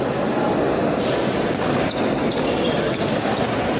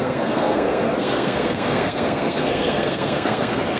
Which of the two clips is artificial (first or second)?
second